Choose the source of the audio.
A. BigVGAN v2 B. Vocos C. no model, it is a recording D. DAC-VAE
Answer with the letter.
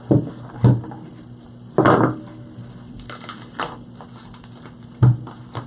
C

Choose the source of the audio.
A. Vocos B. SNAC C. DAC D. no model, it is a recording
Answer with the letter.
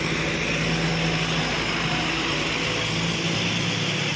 D